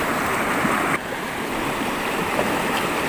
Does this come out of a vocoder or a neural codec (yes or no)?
no